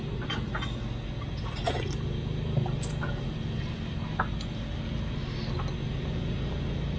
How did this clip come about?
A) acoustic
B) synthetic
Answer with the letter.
A